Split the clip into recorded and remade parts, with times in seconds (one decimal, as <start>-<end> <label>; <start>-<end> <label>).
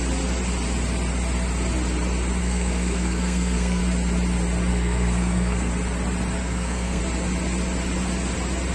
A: 0.0-2.4 recorded; 2.4-3.8 remade; 3.8-4.7 recorded; 4.7-5.7 remade; 5.7-6.4 recorded; 6.4-7.0 remade; 7.0-8.7 recorded